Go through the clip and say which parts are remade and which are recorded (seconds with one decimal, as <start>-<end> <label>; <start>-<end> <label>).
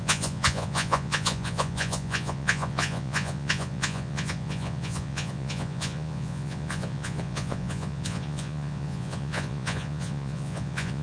0.0-11.0 remade